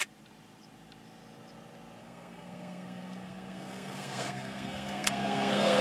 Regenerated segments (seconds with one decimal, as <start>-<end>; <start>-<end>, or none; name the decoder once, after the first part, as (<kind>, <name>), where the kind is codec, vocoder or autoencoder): 2.0-5.8 (codec, SNAC)